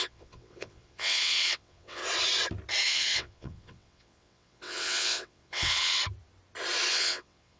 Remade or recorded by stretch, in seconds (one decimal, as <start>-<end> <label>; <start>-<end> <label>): 0.0-2.0 remade; 2.0-2.9 recorded; 2.9-6.0 remade; 6.0-6.9 recorded; 6.9-7.6 remade